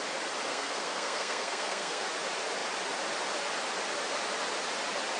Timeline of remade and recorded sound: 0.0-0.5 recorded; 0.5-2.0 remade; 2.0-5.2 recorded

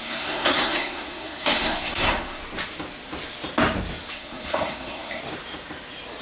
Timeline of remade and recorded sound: 0.0-2.4 remade; 2.4-4.1 recorded; 4.1-5.2 remade; 5.2-6.2 recorded

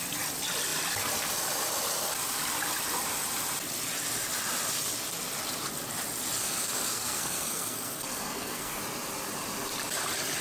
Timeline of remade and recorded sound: 0.0-6.4 recorded; 6.4-8.8 remade; 8.8-10.4 recorded

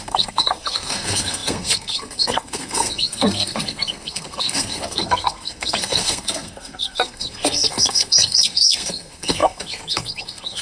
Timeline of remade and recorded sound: 0.0-10.6 remade

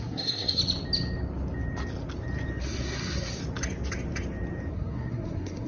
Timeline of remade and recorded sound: 0.0-0.6 remade; 0.6-2.6 recorded; 2.6-3.4 remade; 3.4-4.7 recorded; 4.7-5.7 remade

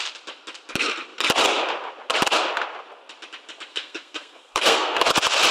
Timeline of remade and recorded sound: 0.0-3.7 recorded; 3.7-5.1 remade; 5.1-5.5 recorded

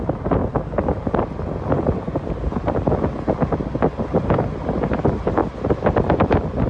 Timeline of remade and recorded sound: 0.0-6.7 recorded

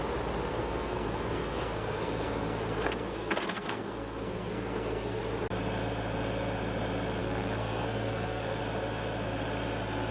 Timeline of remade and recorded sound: 0.0-0.5 recorded; 0.5-5.2 remade; 5.2-7.2 recorded; 7.2-8.6 remade; 8.6-10.1 recorded